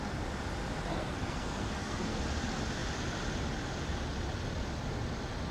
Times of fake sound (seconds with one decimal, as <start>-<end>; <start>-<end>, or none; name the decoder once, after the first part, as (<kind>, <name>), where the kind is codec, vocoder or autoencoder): 0.9-2.2 (codec, SNAC)